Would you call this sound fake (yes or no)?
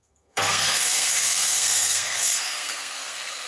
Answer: yes